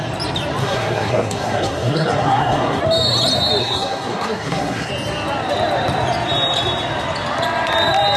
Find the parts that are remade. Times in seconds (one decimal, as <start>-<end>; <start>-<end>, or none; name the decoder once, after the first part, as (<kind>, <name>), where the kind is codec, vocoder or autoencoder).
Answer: 0.6-2.8 (codec, SNAC); 3.6-4.9